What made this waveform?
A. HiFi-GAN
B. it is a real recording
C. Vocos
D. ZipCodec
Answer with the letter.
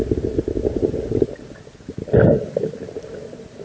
B